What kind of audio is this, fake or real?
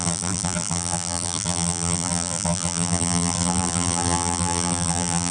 fake